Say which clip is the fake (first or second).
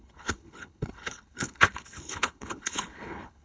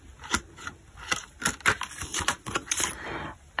first